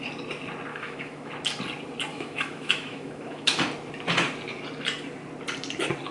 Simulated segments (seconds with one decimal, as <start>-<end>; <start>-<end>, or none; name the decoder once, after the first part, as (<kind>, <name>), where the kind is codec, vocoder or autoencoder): 0.7-1.3 (autoencoder, DAC-VAE); 2.1-3.6